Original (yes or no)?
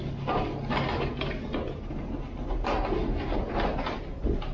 yes